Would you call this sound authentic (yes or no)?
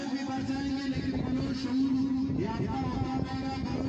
yes